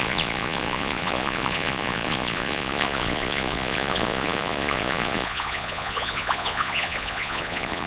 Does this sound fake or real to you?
fake